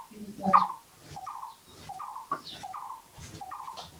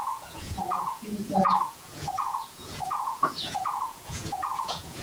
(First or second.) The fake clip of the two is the second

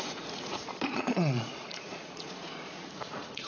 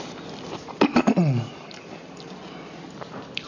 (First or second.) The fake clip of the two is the first